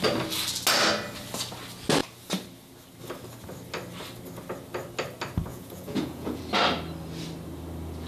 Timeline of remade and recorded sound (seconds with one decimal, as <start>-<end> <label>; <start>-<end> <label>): 0.0-5.5 recorded; 5.5-6.4 remade; 6.4-8.1 recorded